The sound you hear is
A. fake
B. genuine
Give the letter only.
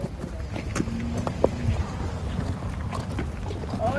B